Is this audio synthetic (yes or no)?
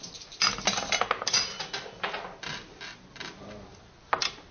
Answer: no